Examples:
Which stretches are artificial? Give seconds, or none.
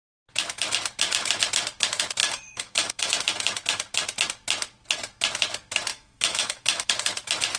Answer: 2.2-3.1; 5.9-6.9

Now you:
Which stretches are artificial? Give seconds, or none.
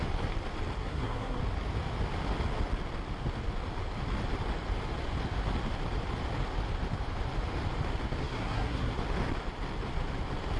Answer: 0.8-1.4; 8.2-8.9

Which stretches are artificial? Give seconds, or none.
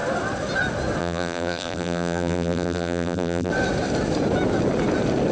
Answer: 1.0-3.5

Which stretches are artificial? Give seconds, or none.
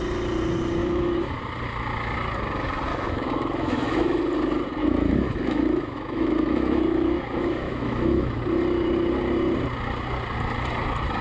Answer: 0.8-1.4; 2.9-4.2; 4.8-8.4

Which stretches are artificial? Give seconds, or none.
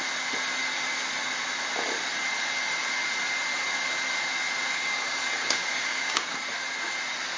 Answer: 4.7-6.4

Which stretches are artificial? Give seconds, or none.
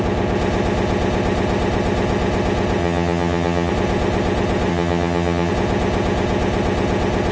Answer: 2.8-3.7; 4.7-5.5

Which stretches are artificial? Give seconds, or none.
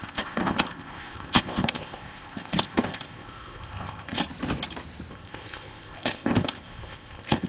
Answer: 0.0-4.2; 5.1-7.5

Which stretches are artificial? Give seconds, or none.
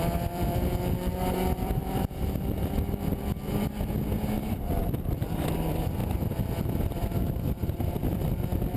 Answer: 0.0-8.8